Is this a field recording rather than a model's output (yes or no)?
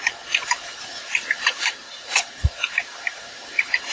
no